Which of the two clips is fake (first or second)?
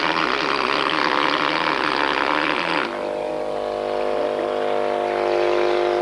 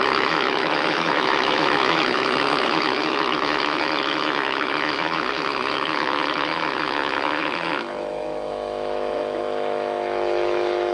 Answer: second